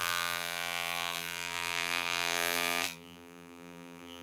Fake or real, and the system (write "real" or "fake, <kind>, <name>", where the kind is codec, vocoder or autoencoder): fake, vocoder, BigVGAN v2